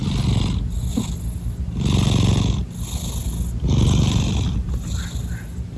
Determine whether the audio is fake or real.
real